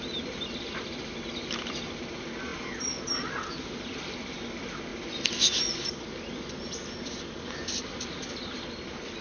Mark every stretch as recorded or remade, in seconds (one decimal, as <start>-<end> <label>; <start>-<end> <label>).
0.0-9.2 recorded